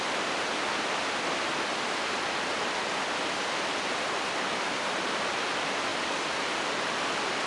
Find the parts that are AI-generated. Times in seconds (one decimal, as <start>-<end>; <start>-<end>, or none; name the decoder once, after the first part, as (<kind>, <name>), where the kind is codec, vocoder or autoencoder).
none